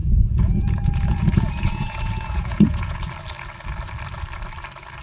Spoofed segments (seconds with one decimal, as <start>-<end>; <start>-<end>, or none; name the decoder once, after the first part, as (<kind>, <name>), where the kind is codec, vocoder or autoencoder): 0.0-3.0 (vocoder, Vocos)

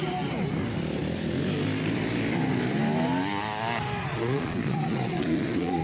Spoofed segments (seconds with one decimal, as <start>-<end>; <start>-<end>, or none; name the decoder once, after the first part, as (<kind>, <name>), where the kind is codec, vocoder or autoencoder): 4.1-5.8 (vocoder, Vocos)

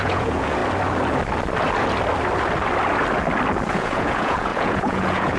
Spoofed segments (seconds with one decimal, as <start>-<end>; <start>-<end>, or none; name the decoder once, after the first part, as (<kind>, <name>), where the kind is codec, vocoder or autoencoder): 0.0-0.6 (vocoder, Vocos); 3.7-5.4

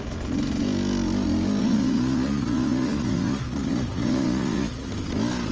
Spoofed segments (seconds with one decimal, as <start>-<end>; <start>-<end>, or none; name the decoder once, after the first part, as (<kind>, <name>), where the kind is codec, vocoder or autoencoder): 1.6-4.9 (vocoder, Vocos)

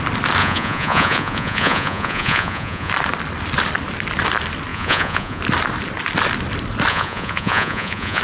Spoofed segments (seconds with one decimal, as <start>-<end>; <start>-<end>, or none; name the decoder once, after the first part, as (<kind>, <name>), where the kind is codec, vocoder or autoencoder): 0.4-2.9 (vocoder, Vocos); 4.7-5.4; 6.9-8.2

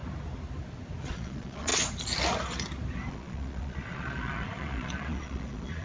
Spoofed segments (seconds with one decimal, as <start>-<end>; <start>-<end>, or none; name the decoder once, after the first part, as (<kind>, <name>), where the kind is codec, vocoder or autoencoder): 1.0-1.7 (vocoder, Vocos); 3.1-5.8